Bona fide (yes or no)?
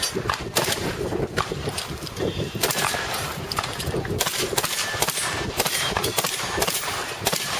no